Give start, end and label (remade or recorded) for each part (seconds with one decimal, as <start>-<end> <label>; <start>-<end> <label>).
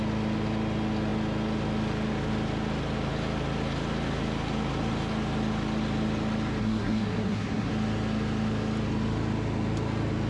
0.0-6.6 recorded; 6.6-7.7 remade; 7.7-10.3 recorded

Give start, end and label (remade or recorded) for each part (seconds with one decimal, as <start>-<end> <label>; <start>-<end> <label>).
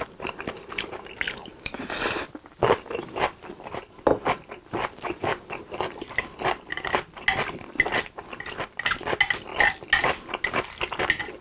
0.0-11.4 recorded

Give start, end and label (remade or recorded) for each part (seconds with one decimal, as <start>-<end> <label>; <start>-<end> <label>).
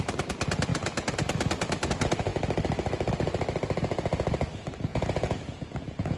0.0-4.9 recorded; 4.9-6.2 remade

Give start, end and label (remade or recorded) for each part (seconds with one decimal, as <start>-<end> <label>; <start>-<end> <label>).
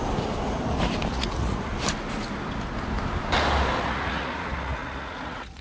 0.0-1.1 recorded; 1.1-1.7 remade; 1.7-3.8 recorded; 3.8-5.6 remade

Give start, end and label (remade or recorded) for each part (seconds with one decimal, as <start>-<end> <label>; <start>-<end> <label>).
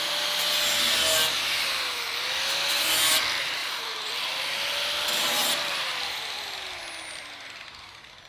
0.0-3.6 recorded; 3.6-4.1 remade; 4.1-8.3 recorded